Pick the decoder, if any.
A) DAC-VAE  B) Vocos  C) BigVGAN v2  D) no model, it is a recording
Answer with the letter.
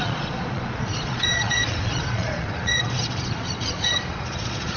B